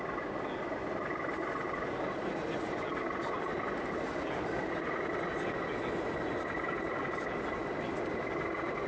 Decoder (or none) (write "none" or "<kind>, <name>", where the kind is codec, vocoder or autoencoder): none